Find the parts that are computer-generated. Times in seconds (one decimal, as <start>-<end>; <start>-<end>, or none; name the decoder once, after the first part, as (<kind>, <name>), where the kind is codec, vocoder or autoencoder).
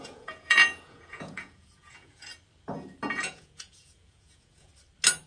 0.0-2.3 (vocoder, Vocos); 3.1-4.7